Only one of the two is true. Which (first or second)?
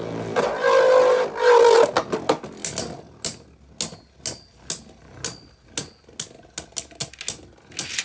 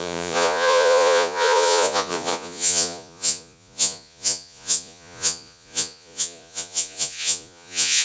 first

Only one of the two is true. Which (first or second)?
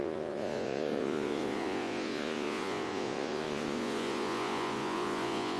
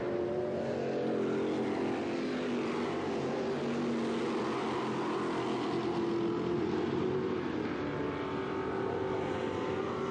second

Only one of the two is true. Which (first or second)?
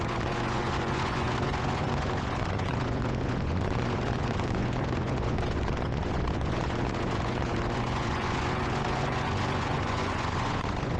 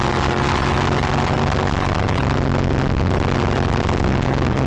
second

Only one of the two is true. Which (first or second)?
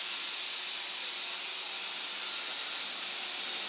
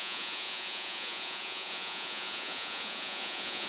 first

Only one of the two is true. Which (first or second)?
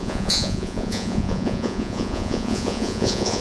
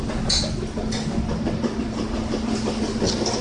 second